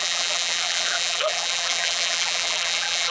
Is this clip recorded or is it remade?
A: remade